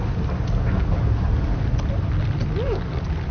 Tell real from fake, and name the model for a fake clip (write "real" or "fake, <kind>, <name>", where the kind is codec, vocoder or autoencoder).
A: real